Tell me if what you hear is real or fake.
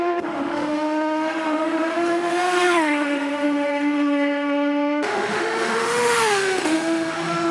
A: fake